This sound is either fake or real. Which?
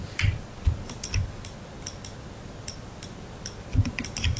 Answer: real